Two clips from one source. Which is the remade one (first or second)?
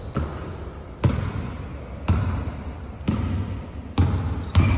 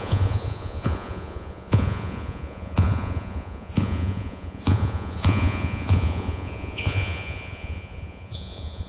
second